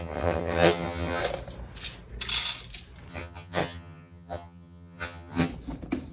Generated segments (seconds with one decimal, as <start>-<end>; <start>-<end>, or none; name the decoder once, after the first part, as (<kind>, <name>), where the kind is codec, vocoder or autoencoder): 0.0-1.2 (vocoder, HiFi-GAN); 3.1-5.5